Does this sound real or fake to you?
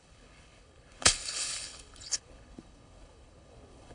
fake